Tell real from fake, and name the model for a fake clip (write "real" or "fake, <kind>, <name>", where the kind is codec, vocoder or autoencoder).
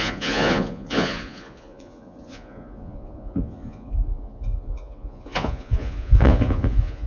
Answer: fake, vocoder, Vocos